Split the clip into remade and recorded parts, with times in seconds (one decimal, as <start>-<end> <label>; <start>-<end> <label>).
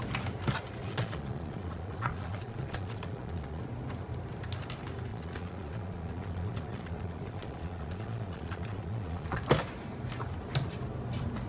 0.0-0.8 recorded; 0.8-3.6 remade; 3.6-5.1 recorded; 5.1-9.4 remade; 9.4-11.5 recorded